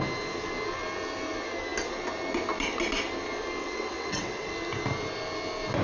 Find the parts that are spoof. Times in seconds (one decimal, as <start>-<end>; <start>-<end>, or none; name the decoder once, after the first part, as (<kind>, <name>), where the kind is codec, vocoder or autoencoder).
3.6-4.5 (vocoder, WaveNeXt)